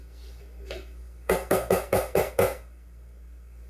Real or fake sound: fake